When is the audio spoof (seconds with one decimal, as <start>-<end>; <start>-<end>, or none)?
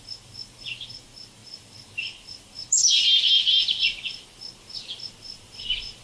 none